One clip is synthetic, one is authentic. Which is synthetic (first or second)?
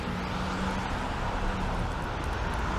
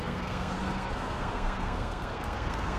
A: second